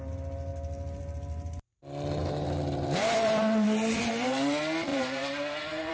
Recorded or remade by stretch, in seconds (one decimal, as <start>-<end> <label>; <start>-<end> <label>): 0.0-2.2 recorded; 2.2-4.0 remade; 4.0-4.9 recorded; 4.9-5.9 remade